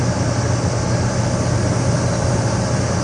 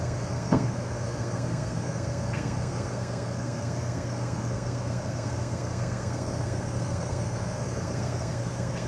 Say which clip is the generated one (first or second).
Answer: second